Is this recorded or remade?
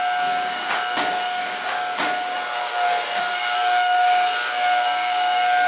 remade